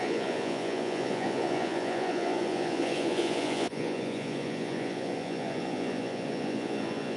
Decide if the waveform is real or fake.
fake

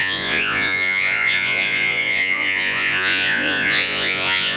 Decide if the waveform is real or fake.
fake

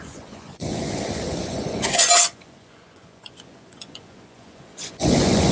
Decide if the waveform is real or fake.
fake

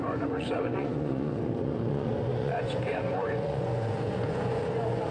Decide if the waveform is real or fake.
fake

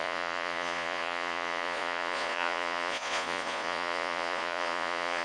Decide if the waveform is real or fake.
fake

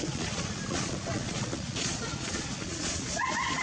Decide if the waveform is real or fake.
fake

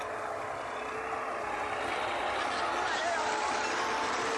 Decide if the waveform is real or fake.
real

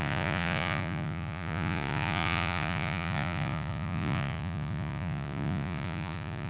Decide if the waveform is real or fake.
fake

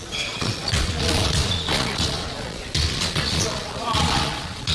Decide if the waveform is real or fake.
fake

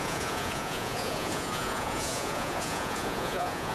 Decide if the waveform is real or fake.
fake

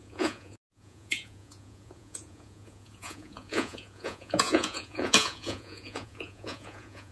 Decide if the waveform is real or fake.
fake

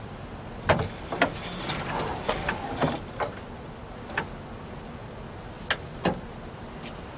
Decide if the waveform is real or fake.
real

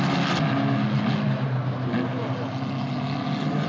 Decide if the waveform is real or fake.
real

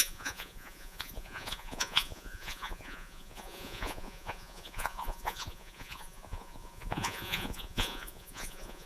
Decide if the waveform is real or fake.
fake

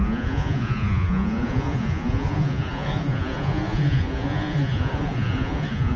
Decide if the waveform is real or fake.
fake